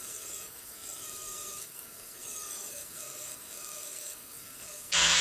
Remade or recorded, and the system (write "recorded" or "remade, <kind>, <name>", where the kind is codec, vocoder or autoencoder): remade, codec, SNAC